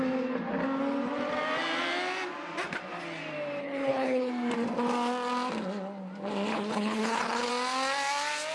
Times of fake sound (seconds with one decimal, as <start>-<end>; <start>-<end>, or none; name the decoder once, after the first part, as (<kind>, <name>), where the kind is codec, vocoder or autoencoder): 3.6-4.3 (codec, HILCodec); 6.5-7.5